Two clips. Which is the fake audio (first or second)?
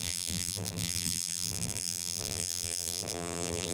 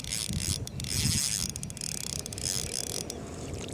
first